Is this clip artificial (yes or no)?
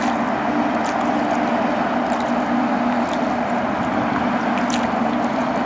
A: no